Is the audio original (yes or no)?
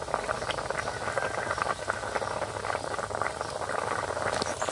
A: yes